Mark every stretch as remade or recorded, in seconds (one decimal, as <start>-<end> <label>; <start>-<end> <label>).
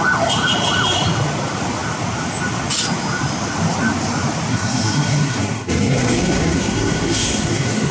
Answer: 0.0-4.5 recorded; 4.5-7.9 remade